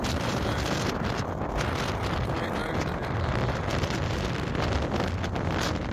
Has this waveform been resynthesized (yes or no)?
no